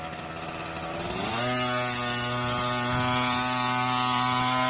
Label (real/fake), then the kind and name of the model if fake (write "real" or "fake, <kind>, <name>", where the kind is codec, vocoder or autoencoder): real